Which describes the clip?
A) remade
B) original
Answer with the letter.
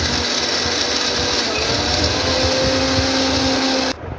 B